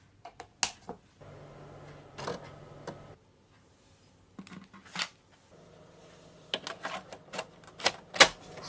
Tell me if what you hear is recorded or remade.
recorded